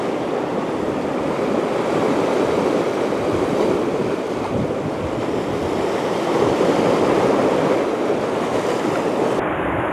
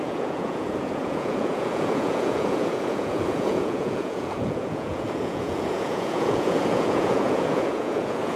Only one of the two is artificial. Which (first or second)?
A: second